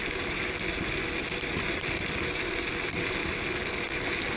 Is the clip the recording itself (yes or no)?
yes